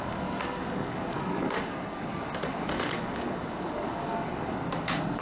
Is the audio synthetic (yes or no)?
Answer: yes